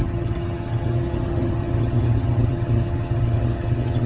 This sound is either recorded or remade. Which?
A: remade